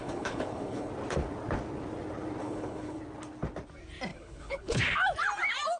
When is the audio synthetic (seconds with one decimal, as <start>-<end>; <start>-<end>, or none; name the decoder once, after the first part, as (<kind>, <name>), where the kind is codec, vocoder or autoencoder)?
0.0-0.9 (codec, HILCodec); 2.4-3.0; 4.1-4.8

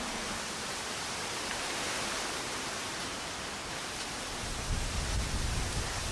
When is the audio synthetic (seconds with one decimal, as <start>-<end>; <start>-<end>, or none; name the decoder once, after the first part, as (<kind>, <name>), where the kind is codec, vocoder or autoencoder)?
0.0-1.5 (vocoder, BigVGAN v2); 4.0-6.1

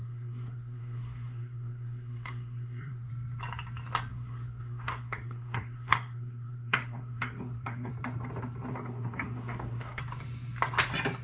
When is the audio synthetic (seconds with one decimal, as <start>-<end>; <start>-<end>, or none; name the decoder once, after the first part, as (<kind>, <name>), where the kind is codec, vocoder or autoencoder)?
0.0-3.1 (codec, SNAC); 4.1-7.9; 8.7-10.0

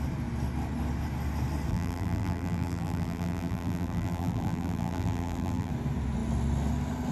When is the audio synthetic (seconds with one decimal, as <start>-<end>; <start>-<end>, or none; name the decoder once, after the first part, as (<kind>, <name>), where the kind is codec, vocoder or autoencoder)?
1.7-5.7 (vocoder, BigVGAN v2)

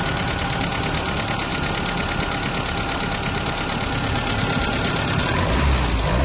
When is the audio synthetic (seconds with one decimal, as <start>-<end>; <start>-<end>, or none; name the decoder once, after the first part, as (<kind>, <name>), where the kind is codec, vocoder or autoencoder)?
none

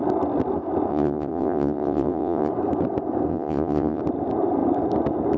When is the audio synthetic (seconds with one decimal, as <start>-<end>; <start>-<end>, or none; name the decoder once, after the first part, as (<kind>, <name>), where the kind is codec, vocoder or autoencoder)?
0.9-2.5 (vocoder, WaveNeXt); 3.3-4.0

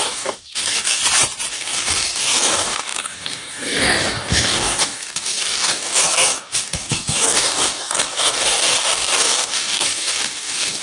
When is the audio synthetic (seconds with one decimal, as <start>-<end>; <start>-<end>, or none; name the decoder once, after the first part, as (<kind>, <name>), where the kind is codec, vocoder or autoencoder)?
0.0-1.0 (codec, DAC); 1.5-10.8